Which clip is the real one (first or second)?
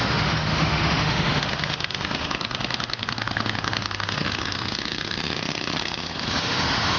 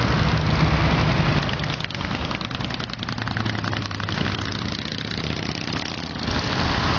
second